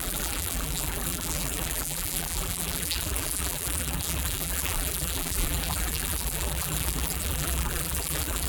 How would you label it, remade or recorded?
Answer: remade